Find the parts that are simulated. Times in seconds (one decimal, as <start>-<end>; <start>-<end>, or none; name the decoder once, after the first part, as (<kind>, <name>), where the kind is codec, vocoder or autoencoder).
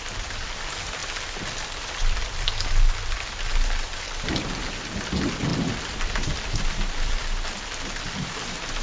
none